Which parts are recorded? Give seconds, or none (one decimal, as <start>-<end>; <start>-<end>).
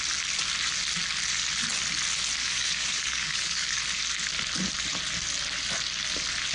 0.0-2.4; 3.8-6.5